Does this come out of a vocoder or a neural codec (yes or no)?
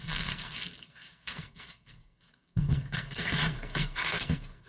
yes